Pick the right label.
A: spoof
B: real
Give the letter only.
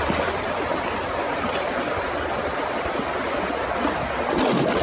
B